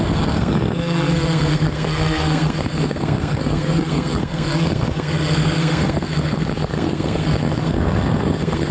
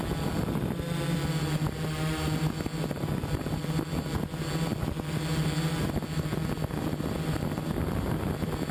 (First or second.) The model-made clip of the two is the first